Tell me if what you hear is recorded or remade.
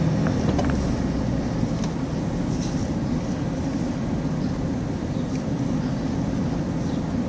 recorded